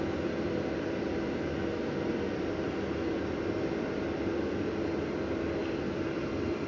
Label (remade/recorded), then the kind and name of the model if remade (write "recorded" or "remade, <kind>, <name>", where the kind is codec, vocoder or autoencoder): recorded